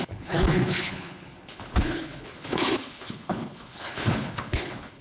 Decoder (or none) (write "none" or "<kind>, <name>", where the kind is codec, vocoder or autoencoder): codec, HILCodec